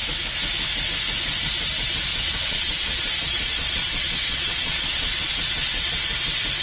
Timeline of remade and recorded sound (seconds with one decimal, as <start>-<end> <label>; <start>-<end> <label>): 0.0-2.1 recorded; 2.1-6.1 remade; 6.1-6.6 recorded